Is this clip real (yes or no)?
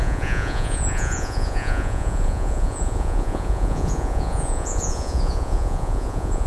no